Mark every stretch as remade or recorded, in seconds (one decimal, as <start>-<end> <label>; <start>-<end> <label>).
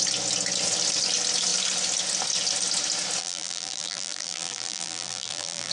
0.0-3.2 recorded; 3.2-5.7 remade